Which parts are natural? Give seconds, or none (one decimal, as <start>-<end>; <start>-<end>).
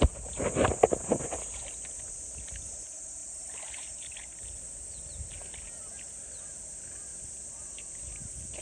0.0-7.1; 8.1-8.6